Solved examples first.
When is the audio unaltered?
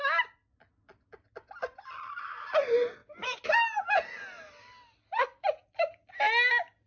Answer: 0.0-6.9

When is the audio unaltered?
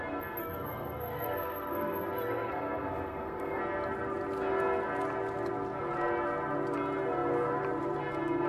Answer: 0.0-0.4; 3.6-8.5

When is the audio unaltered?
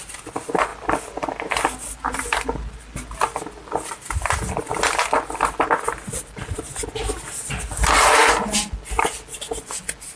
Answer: 0.0-10.2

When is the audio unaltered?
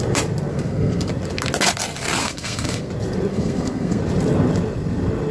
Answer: 0.0-0.5; 1.1-2.2; 2.9-3.3; 4.0-5.3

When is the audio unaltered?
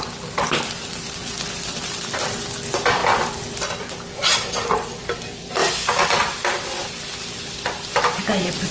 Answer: 0.0-8.7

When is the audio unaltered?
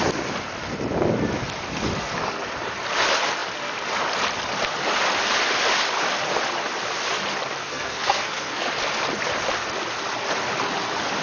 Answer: 0.0-7.6; 8.7-11.2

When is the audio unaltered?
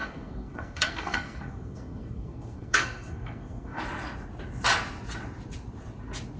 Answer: 3.8-6.4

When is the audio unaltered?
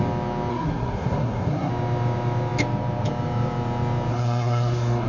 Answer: 0.0-0.5; 1.7-4.1